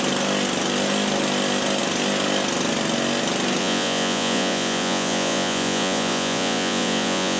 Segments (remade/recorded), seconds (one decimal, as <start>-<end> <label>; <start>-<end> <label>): 0.0-3.6 recorded; 3.6-7.4 remade